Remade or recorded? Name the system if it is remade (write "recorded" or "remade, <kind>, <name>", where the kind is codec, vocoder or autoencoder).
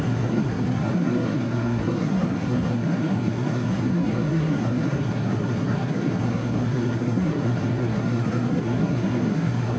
remade, codec, SNAC